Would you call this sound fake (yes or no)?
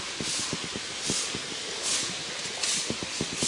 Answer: no